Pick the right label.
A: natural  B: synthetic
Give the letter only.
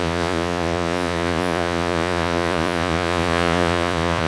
B